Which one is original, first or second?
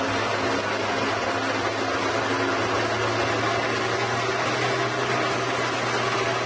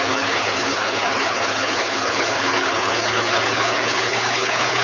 first